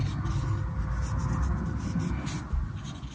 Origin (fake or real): real